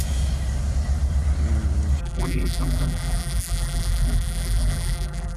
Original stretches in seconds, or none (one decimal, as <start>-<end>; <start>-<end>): 0.0-2.0